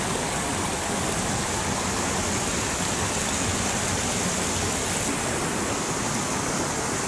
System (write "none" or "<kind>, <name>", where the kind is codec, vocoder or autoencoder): none